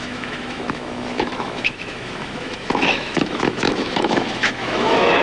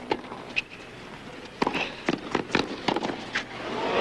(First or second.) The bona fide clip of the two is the second